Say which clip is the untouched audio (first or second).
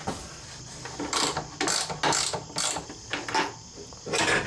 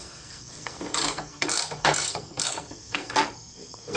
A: first